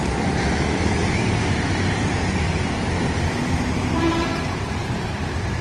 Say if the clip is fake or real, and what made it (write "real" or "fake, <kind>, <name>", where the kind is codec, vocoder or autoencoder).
fake, vocoder, BigVGAN v2